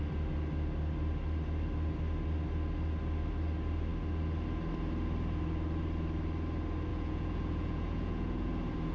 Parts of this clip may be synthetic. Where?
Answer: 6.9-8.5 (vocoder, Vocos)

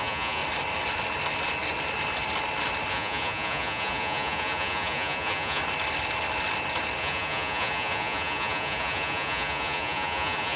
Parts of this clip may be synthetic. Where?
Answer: 0.0-0.4 (vocoder, Vocos); 2.9-5.6; 7.0-10.6

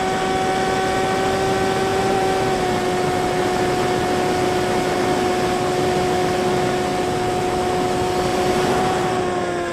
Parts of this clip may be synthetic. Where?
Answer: 1.9-2.4 (vocoder, BigVGAN v2); 8.3-9.2

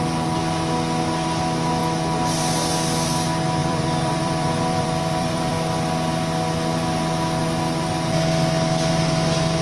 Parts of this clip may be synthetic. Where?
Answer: 3.6-5.5 (vocoder, BigVGAN v2)

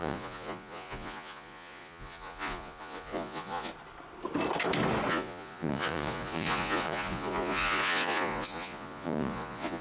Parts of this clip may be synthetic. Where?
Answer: 0.0-3.7 (vocoder, Vocos); 5.1-9.8